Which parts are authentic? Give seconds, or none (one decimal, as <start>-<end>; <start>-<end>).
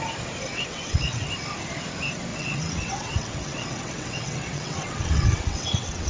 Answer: 0.0-0.5; 1.3-2.3